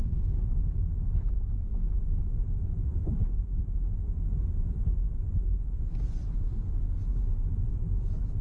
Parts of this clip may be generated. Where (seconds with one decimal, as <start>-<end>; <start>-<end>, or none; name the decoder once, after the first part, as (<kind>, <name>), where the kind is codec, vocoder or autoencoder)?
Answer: 1.7-2.2 (vocoder, Vocos); 2.9-3.6